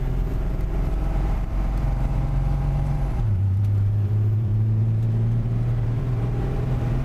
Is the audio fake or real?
fake